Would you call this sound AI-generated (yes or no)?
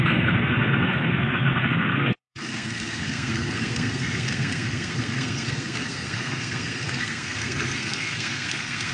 yes